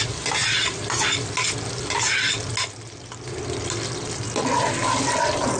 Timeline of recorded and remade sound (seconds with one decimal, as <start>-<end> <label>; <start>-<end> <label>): 0.0-5.6 recorded